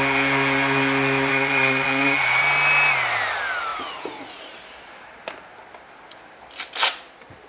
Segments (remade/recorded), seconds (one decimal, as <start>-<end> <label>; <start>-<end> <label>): 0.0-1.3 recorded; 1.3-2.4 remade; 2.4-3.7 recorded; 3.7-4.4 remade; 4.4-7.5 recorded